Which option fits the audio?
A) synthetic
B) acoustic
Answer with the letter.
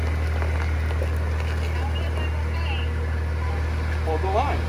B